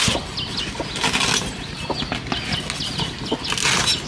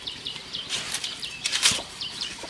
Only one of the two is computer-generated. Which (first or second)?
second